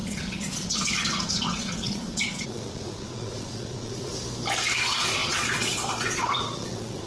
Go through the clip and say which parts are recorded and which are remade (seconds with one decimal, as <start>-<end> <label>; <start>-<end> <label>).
0.0-4.1 remade; 4.1-4.8 recorded; 4.8-7.1 remade